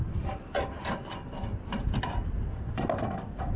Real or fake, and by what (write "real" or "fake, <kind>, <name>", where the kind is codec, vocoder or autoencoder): real